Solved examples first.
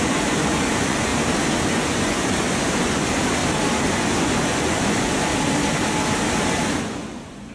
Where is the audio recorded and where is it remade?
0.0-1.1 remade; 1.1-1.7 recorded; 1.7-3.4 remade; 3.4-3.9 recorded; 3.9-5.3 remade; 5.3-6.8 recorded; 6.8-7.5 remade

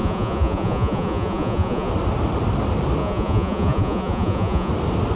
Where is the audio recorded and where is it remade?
0.0-1.9 remade; 1.9-3.0 recorded; 3.0-4.7 remade; 4.7-5.2 recorded

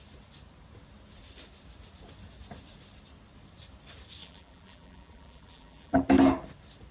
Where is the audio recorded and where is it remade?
0.0-4.2 recorded; 4.2-6.0 remade; 6.0-6.9 recorded

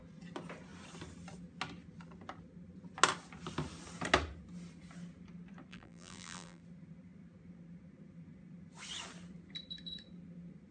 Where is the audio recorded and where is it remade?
0.0-5.7 recorded; 5.7-6.6 remade; 6.6-10.7 recorded

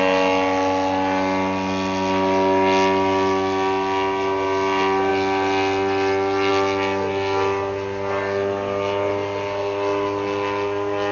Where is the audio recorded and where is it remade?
0.0-11.1 recorded

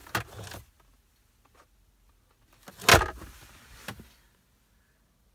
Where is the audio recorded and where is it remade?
0.0-5.3 recorded